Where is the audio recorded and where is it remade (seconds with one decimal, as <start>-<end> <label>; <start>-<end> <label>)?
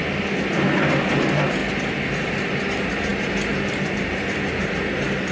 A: 0.0-5.3 recorded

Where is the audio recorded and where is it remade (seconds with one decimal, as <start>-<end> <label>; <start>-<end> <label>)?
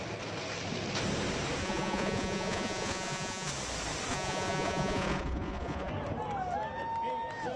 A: 0.0-1.6 recorded; 1.6-3.5 remade; 3.5-4.1 recorded; 4.1-5.9 remade; 5.9-7.6 recorded